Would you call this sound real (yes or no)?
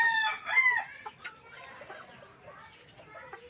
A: yes